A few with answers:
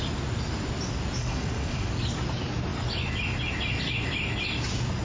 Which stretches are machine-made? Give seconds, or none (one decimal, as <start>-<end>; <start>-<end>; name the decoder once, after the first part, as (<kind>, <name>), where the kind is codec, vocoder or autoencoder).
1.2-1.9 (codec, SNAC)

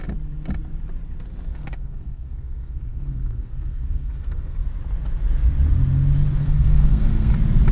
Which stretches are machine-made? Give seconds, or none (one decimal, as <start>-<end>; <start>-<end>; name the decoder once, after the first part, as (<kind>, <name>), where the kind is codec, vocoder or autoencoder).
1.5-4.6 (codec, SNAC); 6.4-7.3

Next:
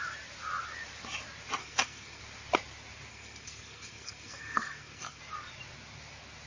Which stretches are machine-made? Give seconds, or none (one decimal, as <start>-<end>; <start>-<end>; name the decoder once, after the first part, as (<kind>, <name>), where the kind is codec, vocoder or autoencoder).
1.6-2.2 (codec, SNAC); 3.1-5.2

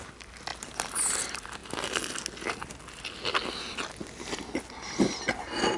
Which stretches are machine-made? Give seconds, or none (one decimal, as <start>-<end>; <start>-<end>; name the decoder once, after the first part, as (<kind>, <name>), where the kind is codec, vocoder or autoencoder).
none